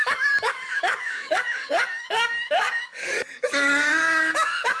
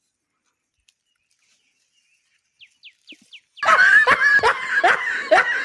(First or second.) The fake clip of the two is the first